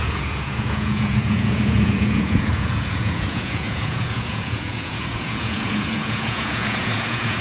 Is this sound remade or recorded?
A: remade